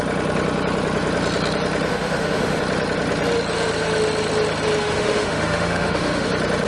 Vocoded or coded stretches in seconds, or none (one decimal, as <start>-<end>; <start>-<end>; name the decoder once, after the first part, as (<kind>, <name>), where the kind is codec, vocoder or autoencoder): 1.9-2.6 (autoencoder, DAC-VAE); 4.8-6.3